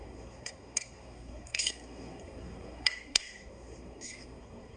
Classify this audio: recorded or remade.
remade